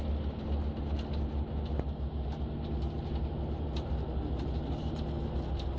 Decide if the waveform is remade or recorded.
recorded